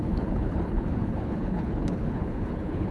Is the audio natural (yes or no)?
no